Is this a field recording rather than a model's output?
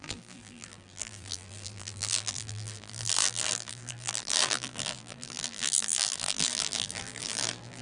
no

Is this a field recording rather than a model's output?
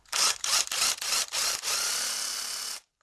yes